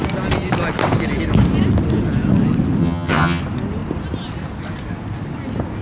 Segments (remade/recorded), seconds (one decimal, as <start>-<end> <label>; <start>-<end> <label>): 0.0-2.8 recorded; 2.8-3.4 remade; 3.4-5.8 recorded